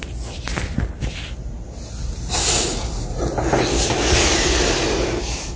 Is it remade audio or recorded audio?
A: recorded